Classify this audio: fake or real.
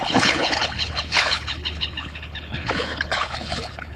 fake